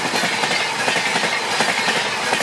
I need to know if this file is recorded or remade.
recorded